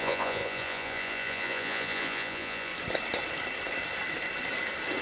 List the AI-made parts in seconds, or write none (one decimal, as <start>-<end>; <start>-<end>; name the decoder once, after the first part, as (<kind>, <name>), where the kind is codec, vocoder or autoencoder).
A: 0.0-2.7 (vocoder, Vocos)